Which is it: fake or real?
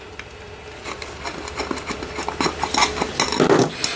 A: real